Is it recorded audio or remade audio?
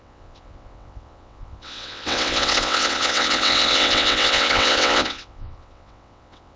remade